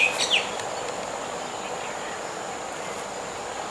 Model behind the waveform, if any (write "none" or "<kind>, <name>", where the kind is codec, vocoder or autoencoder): none